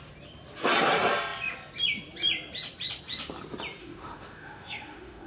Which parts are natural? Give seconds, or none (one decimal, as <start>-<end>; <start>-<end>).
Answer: 0.0-3.8